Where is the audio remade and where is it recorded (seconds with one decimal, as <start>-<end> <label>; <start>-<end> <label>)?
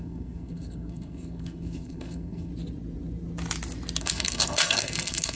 0.0-2.5 remade; 2.5-4.0 recorded; 4.0-5.3 remade